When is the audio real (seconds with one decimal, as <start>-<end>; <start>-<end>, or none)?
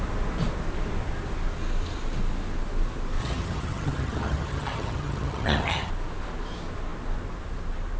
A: 0.0-3.2; 5.9-8.0